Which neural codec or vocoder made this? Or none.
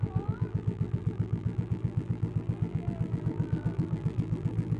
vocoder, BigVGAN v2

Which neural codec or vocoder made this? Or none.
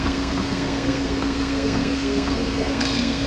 codec, SNAC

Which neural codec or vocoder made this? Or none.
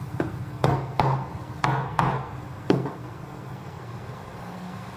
codec, SNAC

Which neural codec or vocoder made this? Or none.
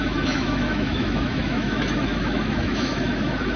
autoencoder, DAC-VAE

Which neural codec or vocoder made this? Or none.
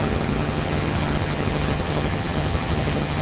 vocoder, HiFi-GAN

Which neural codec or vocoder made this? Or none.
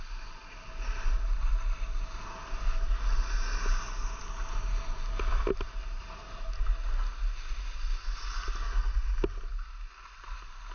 none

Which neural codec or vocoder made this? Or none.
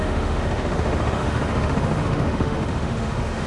autoencoder, DAC-VAE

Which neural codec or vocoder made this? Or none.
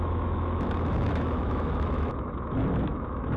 autoencoder, DAC-VAE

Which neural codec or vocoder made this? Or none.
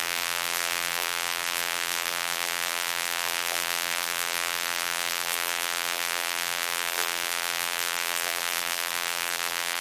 vocoder, BigVGAN v2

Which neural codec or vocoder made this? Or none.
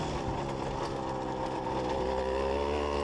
none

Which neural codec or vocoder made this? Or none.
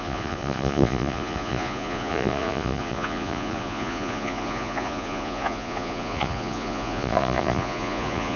vocoder, Vocos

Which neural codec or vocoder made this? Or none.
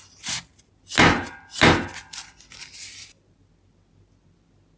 none